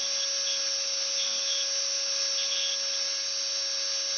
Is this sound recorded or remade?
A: recorded